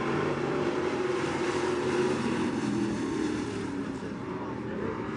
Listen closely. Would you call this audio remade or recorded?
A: remade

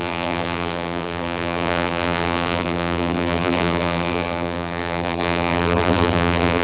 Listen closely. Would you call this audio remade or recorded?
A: remade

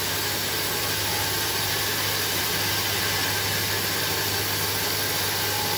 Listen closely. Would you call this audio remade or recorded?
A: recorded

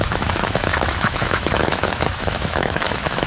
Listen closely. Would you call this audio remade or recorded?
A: remade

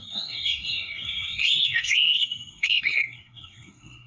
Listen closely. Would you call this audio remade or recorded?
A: remade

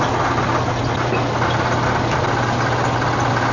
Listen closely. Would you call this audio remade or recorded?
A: recorded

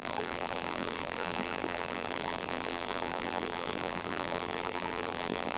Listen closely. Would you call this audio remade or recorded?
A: remade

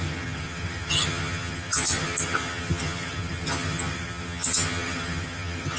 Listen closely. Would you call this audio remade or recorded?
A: remade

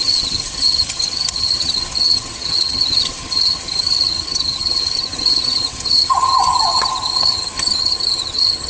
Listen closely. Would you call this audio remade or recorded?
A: remade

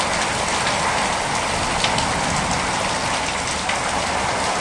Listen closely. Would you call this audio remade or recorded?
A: recorded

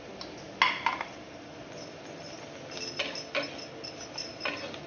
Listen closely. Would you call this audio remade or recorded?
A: recorded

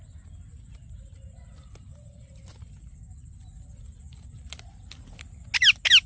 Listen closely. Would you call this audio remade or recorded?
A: recorded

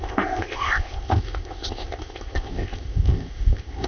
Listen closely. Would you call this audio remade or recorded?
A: remade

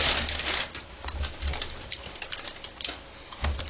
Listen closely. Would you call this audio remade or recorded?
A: recorded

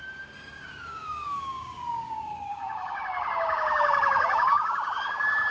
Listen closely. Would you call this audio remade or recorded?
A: remade